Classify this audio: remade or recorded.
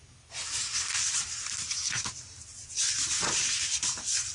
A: remade